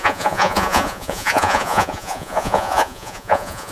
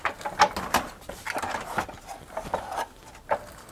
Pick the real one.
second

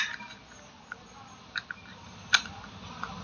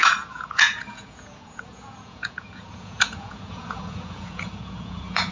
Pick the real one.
first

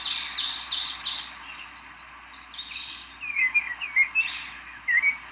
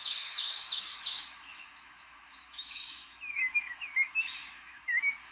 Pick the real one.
first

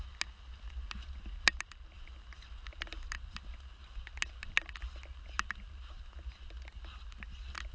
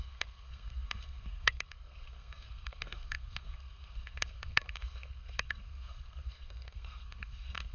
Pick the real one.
first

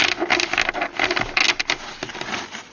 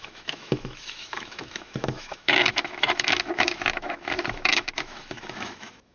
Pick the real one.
first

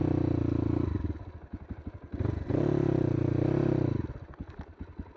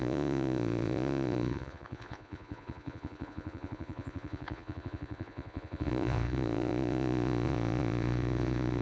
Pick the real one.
first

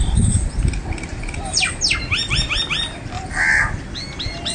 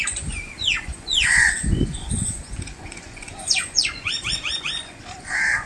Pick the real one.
first